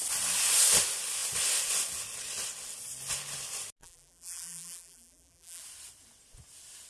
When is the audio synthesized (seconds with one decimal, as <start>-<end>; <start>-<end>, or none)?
3.8-5.6